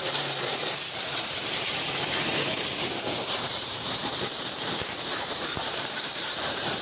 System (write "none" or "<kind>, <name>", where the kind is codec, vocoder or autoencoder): vocoder, BigVGAN v2